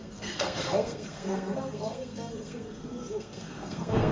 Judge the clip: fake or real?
fake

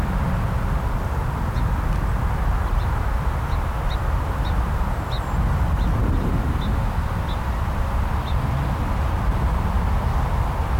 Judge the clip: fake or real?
real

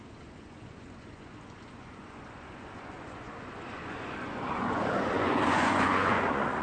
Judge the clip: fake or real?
fake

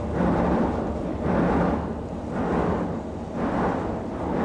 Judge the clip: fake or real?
real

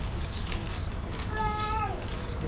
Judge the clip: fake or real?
fake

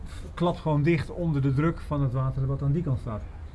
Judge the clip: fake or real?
real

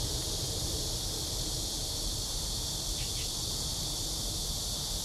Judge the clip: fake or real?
real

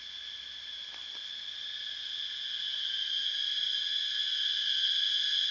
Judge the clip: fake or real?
real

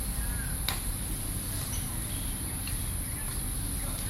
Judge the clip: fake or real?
real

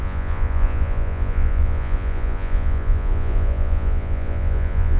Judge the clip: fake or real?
fake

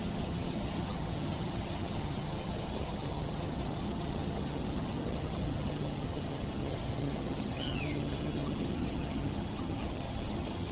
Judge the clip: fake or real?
fake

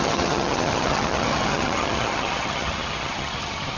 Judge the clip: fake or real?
fake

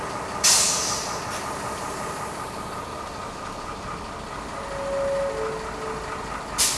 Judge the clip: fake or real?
real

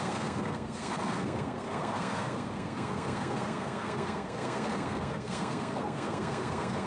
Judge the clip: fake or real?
fake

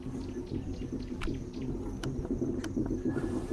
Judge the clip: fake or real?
real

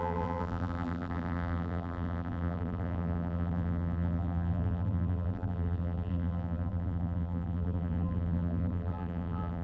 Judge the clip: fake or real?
fake